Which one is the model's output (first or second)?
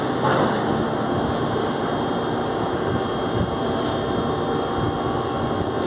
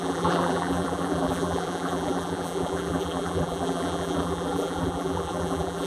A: second